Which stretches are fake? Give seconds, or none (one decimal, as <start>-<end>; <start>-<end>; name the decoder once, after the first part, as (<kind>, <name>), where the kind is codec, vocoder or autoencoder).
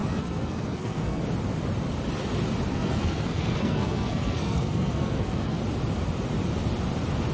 0.0-1.2 (codec, SNAC); 2.7-5.6